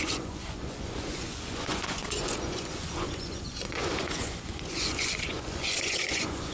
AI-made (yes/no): yes